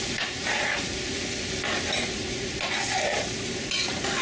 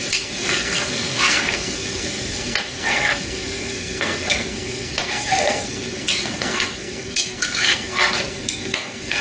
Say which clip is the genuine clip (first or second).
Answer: first